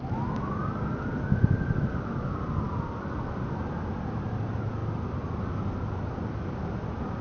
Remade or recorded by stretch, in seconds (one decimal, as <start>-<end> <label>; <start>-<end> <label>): 0.0-7.2 recorded